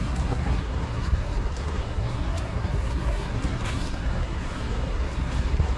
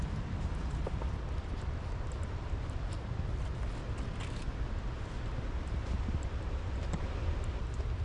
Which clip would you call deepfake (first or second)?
first